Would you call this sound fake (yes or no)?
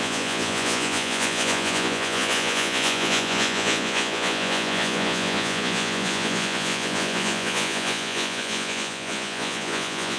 yes